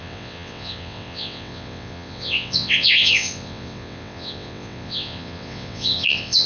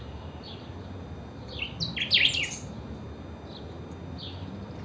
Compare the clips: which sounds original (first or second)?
second